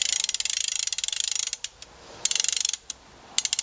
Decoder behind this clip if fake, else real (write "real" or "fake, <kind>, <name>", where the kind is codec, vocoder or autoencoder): real